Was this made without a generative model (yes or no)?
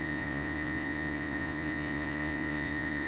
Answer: no